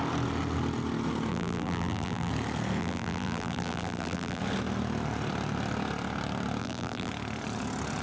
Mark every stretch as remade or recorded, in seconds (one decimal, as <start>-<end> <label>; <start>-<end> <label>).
0.0-1.3 recorded; 1.3-2.3 remade; 2.3-2.8 recorded; 2.8-4.4 remade; 4.4-6.6 recorded; 6.6-7.1 remade; 7.1-8.0 recorded